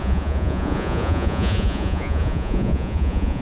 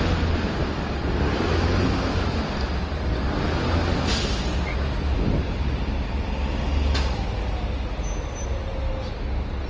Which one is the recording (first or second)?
second